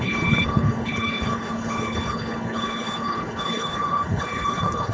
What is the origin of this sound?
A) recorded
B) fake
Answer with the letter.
B